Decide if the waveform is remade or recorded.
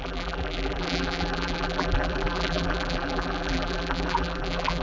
remade